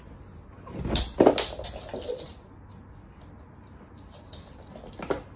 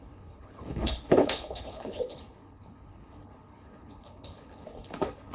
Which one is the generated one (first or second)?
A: second